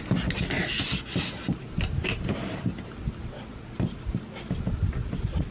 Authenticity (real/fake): real